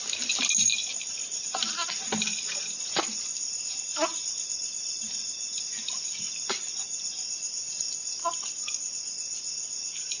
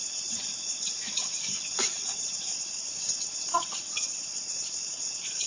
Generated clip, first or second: second